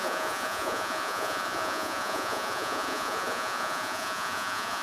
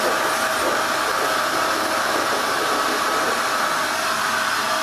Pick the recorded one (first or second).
second